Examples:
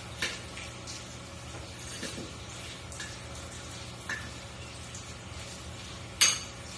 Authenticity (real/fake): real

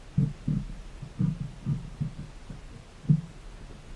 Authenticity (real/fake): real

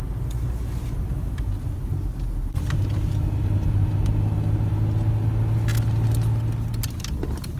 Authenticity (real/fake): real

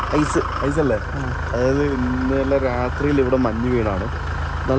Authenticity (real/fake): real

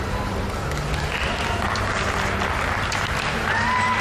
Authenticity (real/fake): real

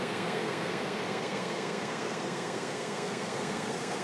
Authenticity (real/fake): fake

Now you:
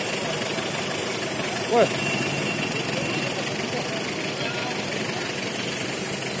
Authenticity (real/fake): real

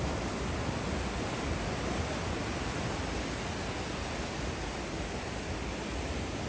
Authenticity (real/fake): real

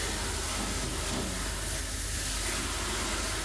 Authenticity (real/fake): real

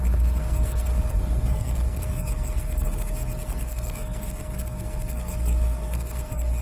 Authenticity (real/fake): fake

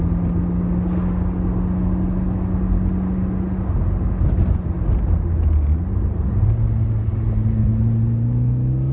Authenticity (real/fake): real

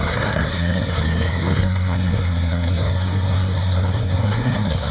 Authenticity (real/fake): fake